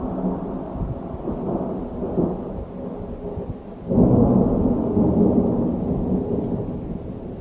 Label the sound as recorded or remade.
recorded